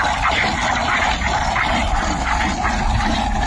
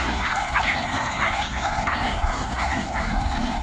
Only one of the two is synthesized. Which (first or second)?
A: second